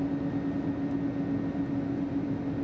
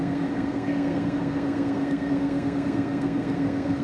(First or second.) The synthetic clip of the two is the second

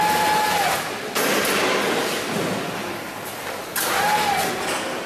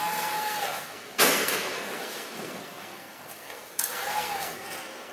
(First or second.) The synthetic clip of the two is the second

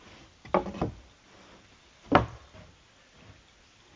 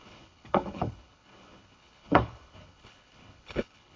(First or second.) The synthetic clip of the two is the second